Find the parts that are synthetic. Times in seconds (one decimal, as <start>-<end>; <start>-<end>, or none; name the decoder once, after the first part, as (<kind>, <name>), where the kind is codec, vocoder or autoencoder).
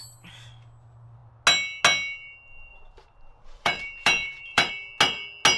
2.7-4.7 (vocoder, BigVGAN v2)